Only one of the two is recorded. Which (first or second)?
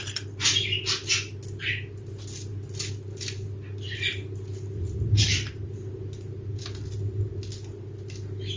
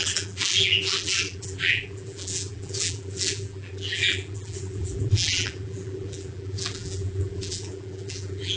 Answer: first